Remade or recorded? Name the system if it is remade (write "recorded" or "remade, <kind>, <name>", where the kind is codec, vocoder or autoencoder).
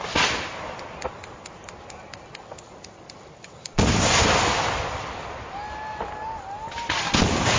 recorded